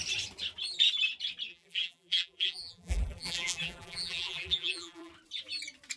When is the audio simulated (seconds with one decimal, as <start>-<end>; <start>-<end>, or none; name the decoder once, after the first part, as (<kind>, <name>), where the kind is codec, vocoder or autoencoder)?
1.5-5.1 (vocoder, BigVGAN v2)